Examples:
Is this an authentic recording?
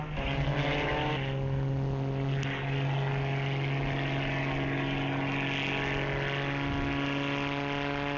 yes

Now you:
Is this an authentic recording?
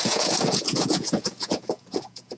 no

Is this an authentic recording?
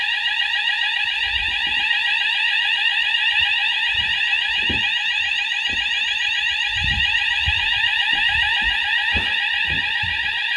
yes